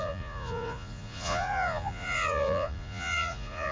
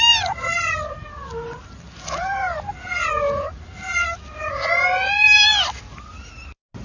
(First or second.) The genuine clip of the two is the second